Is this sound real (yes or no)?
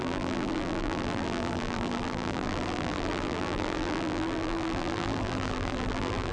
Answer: no